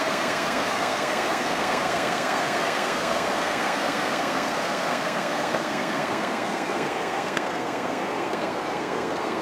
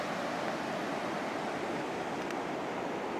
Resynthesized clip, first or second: first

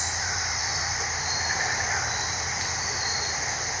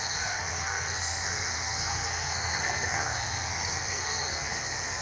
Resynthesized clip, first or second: second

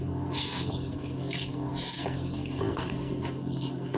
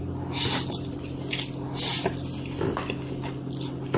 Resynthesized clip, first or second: first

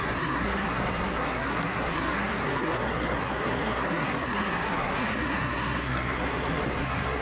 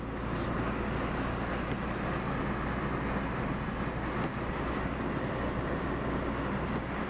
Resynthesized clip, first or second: first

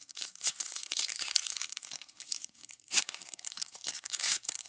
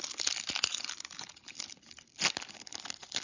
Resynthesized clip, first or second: first